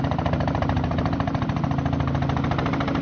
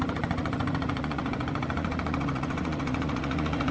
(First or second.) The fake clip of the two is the second